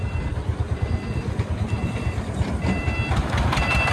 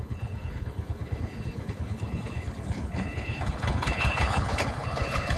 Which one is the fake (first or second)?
second